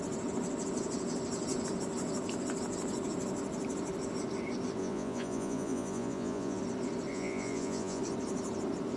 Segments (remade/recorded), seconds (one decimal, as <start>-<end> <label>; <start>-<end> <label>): 0.0-4.8 recorded; 4.8-6.6 remade; 6.6-7.1 recorded; 7.1-8.0 remade; 8.0-9.0 recorded